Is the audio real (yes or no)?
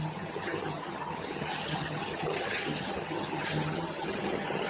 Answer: no